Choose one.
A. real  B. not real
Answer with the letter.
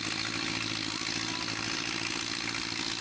A